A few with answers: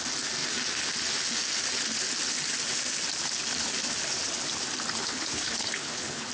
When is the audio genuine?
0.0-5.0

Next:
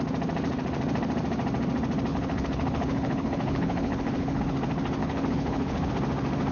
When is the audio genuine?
0.0-2.1; 4.4-5.0; 5.9-6.5

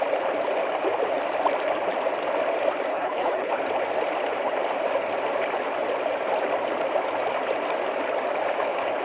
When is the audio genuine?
0.0-2.9; 3.5-9.0

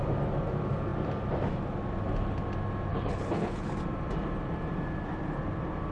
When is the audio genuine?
0.0-2.9; 3.7-5.9

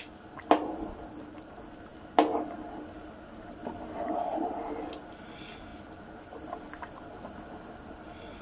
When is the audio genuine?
0.0-8.4

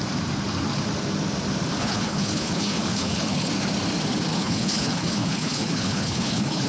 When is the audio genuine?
0.0-1.8; 3.5-4.3